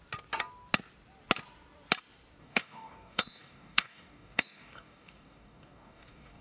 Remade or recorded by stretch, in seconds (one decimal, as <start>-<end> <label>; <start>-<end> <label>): 0.0-2.4 recorded; 2.4-6.4 remade